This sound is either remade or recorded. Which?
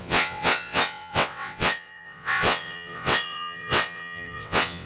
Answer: remade